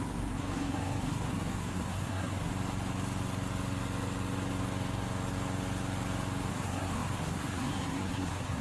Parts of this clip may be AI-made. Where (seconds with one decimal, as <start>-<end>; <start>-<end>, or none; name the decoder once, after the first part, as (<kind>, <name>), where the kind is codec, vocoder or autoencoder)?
0.0-2.5 (codec, SNAC); 6.5-8.6